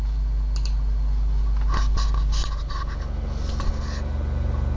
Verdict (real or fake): real